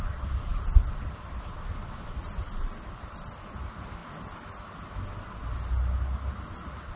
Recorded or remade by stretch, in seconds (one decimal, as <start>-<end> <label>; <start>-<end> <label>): 0.0-0.5 recorded; 0.5-3.4 remade; 3.4-7.0 recorded